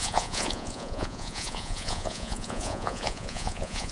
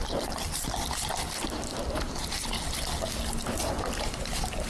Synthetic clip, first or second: first